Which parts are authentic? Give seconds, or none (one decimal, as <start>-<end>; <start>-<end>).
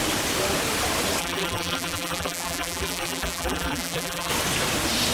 0.0-1.2; 4.3-5.1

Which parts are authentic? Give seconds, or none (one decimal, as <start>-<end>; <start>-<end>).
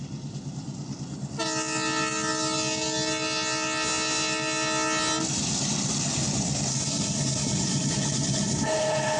0.0-6.7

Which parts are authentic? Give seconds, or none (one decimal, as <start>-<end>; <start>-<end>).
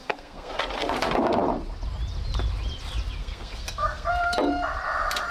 0.5-3.2; 4.1-5.3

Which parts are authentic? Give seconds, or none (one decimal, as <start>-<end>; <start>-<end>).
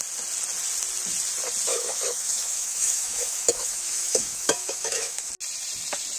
0.0-1.7; 5.3-6.2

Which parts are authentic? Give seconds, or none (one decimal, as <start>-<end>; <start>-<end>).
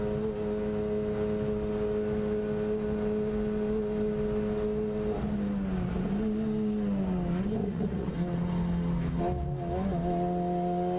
0.0-7.6; 8.1-11.0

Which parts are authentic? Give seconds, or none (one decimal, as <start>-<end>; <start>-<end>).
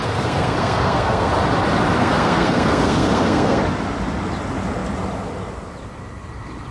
1.3-2.0; 3.6-6.7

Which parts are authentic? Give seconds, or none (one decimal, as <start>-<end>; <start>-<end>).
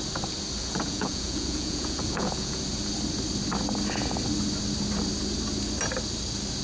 0.0-0.6; 2.6-6.6